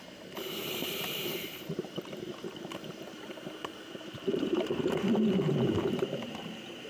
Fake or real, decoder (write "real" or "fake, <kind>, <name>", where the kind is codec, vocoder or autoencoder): fake, vocoder, BigVGAN v2